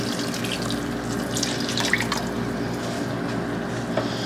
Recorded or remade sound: recorded